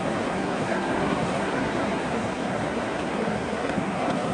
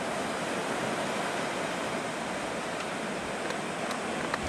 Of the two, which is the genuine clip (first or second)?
second